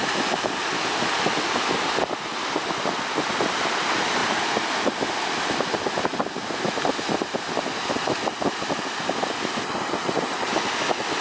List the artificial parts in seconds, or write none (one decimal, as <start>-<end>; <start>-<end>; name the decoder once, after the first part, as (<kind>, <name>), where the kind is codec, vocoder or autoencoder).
none